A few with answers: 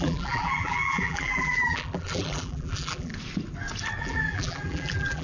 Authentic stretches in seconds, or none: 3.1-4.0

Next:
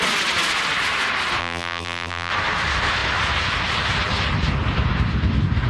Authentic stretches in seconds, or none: 0.0-1.4; 2.3-5.7

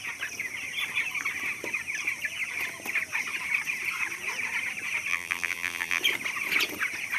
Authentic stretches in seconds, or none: 0.0-5.1; 6.0-7.2